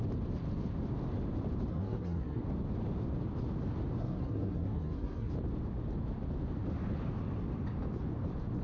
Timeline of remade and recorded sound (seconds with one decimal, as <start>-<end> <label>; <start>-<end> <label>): 0.0-1.7 recorded; 1.7-2.4 remade; 2.4-4.0 recorded; 4.0-5.3 remade; 5.3-8.6 recorded